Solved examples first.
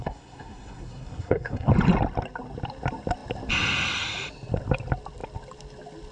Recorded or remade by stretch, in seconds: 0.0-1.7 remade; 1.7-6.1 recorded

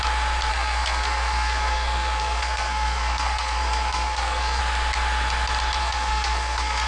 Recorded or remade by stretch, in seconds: 0.0-0.5 recorded; 0.5-4.6 remade; 4.6-5.8 recorded; 5.8-6.9 remade

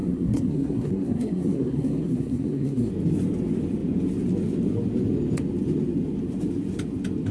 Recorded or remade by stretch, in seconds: 0.0-2.9 remade; 2.9-7.3 recorded